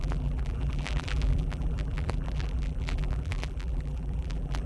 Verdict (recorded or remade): remade